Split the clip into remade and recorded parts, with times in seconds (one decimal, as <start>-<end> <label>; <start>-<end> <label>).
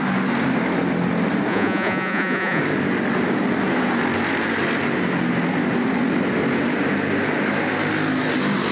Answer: 0.0-1.5 recorded; 1.5-2.6 remade; 2.6-8.7 recorded